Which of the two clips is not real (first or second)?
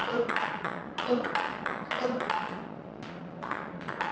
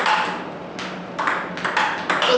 first